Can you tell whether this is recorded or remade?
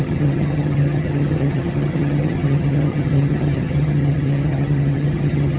remade